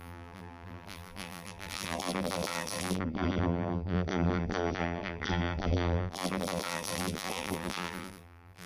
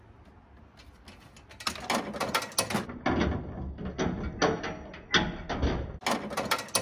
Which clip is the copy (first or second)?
first